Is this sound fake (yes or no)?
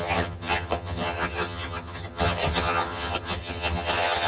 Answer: yes